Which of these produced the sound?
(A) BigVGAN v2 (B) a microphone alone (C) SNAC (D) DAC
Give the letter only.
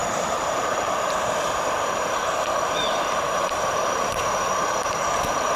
A